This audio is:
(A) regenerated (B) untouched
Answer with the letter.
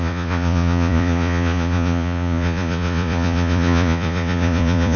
A